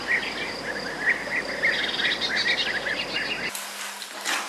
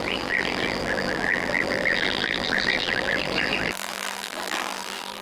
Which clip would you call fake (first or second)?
second